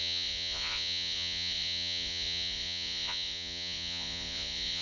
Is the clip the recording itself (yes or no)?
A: no